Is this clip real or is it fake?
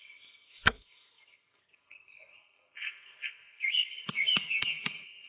fake